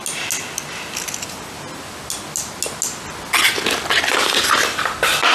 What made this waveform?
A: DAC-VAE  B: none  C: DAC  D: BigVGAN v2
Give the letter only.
B